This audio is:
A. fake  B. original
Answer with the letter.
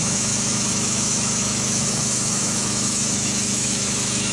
A